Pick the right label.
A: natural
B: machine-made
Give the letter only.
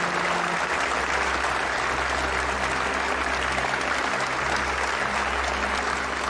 A